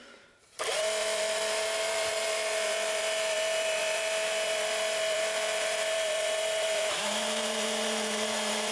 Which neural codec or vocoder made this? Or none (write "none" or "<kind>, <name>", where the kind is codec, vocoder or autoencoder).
vocoder, BigVGAN v2